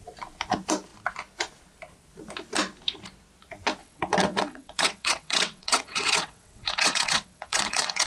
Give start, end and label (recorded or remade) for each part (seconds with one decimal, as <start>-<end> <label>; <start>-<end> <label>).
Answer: 0.0-3.8 recorded; 3.8-8.1 remade